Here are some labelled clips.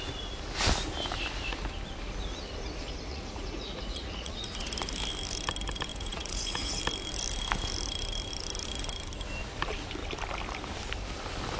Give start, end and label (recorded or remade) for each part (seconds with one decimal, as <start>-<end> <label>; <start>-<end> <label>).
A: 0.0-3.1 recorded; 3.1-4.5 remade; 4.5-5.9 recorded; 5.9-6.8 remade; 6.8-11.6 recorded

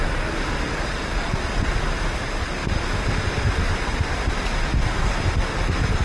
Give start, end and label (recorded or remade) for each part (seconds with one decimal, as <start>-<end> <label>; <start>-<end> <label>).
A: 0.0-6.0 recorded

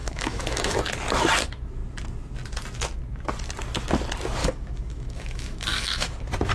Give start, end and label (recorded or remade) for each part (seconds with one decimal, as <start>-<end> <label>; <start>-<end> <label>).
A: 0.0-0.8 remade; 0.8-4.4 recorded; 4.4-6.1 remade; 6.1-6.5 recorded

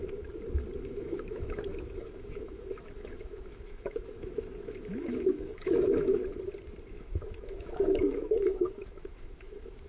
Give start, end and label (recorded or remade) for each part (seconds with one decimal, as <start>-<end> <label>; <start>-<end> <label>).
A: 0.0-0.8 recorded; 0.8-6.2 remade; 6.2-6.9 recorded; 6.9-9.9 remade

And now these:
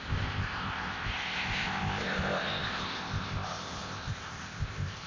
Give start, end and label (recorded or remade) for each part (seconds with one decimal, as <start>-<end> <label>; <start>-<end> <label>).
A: 0.0-5.1 remade

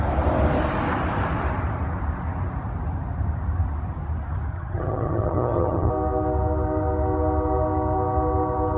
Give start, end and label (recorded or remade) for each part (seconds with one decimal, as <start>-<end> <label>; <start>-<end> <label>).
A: 0.0-4.5 recorded; 4.5-5.9 remade; 5.9-8.8 recorded

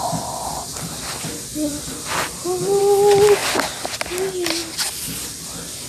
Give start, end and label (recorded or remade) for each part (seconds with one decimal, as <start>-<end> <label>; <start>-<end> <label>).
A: 0.0-1.5 recorded; 1.5-2.8 remade; 2.8-4.6 recorded; 4.6-5.9 remade

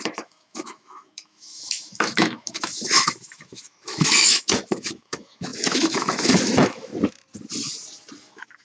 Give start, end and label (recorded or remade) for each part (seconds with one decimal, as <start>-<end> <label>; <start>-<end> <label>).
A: 0.0-6.9 remade; 6.9-8.2 recorded; 8.2-8.6 remade